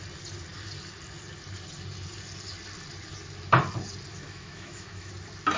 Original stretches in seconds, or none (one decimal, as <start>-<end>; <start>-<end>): 0.0-4.1; 5.1-5.6